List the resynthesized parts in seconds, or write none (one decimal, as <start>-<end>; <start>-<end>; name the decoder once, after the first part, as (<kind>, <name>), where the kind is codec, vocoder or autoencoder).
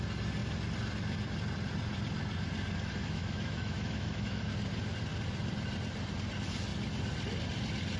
3.0-4.5 (autoencoder, DAC-VAE)